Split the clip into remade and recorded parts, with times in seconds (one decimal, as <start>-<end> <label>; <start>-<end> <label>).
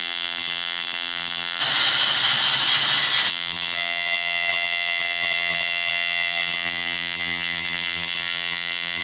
0.0-1.6 remade; 1.6-3.3 recorded; 3.3-9.0 remade